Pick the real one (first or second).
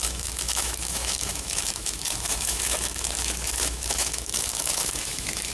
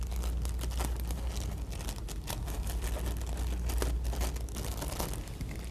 second